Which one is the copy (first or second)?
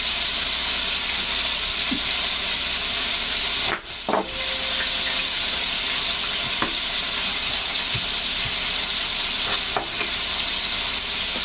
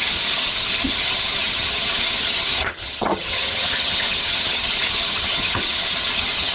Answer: second